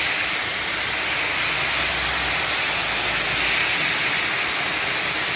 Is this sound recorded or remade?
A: recorded